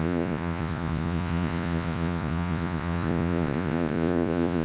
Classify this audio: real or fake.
fake